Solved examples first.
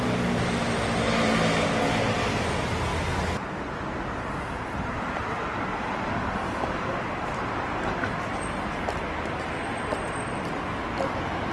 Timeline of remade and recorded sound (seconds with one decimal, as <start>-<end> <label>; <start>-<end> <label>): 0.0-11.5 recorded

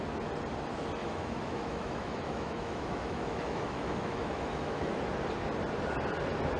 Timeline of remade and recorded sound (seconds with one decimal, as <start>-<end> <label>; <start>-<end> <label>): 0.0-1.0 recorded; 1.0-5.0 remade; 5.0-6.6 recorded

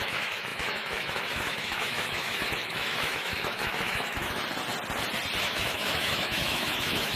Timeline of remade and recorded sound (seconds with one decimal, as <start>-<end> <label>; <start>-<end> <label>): 0.0-4.4 remade; 4.4-5.4 recorded; 5.4-7.2 remade

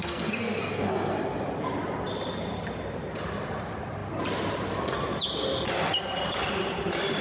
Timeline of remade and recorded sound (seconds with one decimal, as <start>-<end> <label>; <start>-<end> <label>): 0.0-1.2 remade; 1.2-7.2 recorded

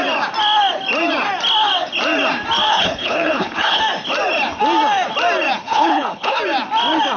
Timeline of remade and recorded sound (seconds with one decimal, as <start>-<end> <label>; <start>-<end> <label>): 0.0-2.7 recorded; 2.7-3.8 remade; 3.8-5.6 recorded; 5.6-6.4 remade; 6.4-7.2 recorded